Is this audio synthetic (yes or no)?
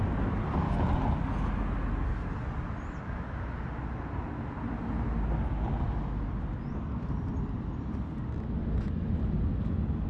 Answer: no